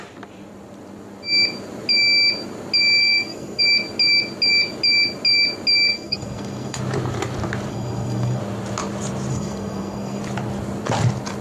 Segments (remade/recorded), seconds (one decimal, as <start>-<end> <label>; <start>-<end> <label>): 0.0-3.0 recorded; 3.0-3.6 remade; 3.6-5.9 recorded; 5.9-6.8 remade; 6.8-7.7 recorded; 7.7-8.4 remade; 8.4-9.3 recorded; 9.3-10.2 remade; 10.2-11.4 recorded